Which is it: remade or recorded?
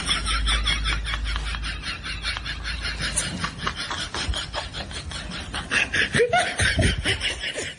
recorded